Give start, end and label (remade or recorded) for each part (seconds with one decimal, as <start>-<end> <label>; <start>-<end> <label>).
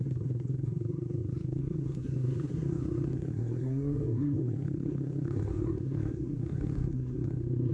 0.0-7.7 remade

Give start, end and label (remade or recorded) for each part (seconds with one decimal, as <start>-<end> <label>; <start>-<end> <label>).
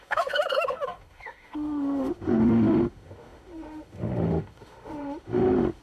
0.0-5.8 remade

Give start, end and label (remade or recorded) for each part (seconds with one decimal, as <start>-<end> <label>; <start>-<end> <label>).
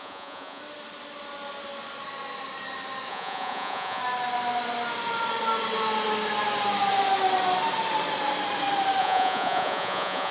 0.0-0.6 remade; 0.6-3.1 recorded; 3.1-4.0 remade; 4.0-9.0 recorded; 9.0-10.3 remade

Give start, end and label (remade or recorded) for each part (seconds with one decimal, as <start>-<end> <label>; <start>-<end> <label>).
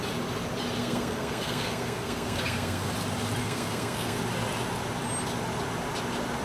0.0-0.8 recorded; 0.8-2.9 remade; 2.9-3.4 recorded; 3.4-4.2 remade; 4.2-6.4 recorded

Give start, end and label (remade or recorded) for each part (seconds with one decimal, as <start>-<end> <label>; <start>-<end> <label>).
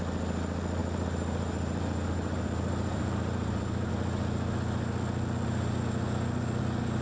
0.0-0.8 recorded; 0.8-3.9 remade; 3.9-7.0 recorded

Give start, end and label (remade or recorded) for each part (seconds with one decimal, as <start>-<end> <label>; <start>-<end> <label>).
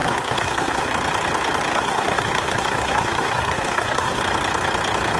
0.0-0.9 remade; 0.9-1.7 recorded; 1.7-4.2 remade; 4.2-5.2 recorded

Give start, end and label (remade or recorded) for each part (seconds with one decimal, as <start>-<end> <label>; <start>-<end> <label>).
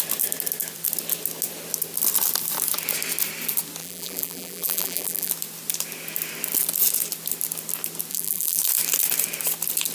0.0-3.8 recorded; 3.8-5.3 remade; 5.3-8.1 recorded; 8.1-8.6 remade; 8.6-9.9 recorded